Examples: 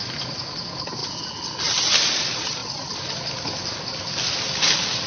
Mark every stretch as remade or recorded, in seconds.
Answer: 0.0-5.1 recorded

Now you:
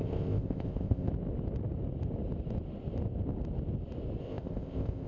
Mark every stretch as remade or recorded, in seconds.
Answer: 0.0-1.1 remade; 1.1-4.2 recorded; 4.2-5.1 remade

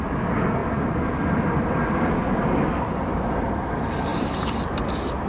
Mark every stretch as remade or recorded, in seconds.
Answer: 0.0-4.1 recorded; 4.1-4.7 remade; 4.7-5.3 recorded

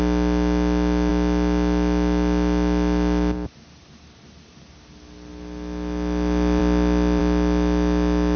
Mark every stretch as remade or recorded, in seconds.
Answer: 0.0-8.4 recorded